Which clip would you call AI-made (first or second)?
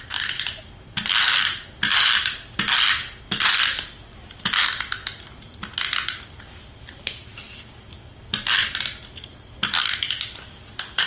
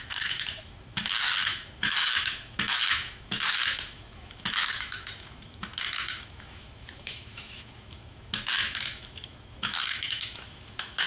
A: second